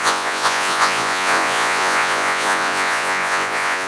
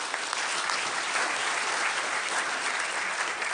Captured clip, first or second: second